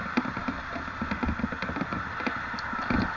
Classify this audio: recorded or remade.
recorded